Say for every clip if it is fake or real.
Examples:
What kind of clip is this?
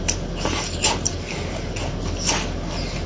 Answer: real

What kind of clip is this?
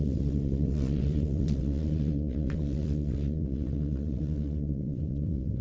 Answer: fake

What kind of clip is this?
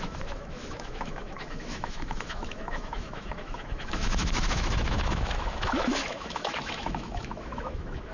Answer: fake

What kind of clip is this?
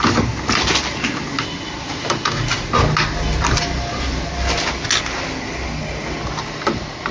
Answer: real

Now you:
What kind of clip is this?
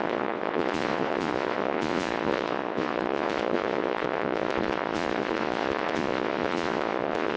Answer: fake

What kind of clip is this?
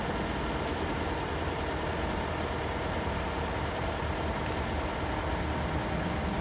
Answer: real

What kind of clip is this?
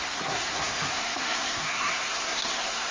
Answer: fake